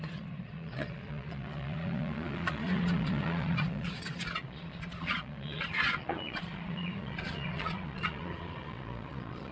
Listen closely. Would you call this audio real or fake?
fake